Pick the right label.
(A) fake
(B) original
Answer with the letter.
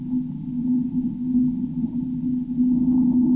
B